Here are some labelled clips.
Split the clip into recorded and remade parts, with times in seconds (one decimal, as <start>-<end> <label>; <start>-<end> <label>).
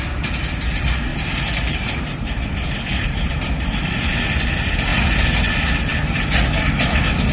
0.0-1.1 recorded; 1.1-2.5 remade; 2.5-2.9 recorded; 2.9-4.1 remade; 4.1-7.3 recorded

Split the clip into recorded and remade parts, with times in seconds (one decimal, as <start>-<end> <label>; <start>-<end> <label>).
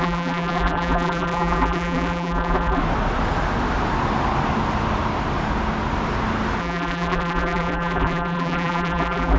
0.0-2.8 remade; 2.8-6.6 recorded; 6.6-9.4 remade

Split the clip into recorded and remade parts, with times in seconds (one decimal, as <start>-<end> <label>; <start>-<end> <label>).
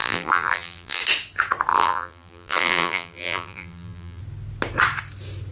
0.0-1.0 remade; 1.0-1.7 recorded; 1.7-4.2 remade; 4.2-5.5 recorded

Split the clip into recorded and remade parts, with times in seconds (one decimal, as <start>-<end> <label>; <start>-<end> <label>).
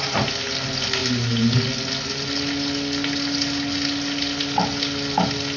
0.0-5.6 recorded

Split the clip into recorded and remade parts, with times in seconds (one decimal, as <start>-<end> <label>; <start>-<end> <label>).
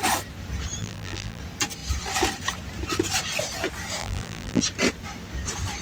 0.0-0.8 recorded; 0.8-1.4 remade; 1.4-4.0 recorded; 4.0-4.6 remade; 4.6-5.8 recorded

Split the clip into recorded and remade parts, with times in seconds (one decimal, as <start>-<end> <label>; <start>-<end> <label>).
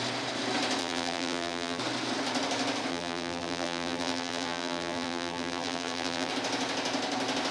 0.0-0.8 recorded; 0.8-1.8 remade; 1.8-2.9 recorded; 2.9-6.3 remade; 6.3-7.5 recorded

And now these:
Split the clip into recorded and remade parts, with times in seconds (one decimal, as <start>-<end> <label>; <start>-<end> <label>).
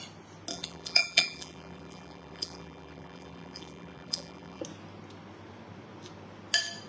0.0-0.5 recorded; 0.5-4.6 remade; 4.6-6.9 recorded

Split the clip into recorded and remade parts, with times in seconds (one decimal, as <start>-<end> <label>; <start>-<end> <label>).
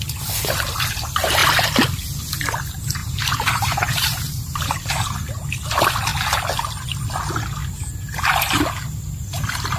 0.0-3.0 recorded; 3.0-4.7 remade; 4.7-9.8 recorded